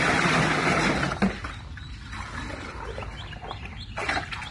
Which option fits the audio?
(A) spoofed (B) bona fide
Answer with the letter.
B